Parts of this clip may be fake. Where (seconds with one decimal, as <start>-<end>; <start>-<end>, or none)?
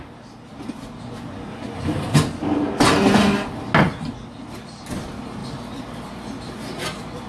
none